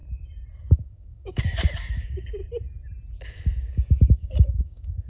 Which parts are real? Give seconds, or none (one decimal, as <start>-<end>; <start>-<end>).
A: 0.0-0.6; 2.4-4.6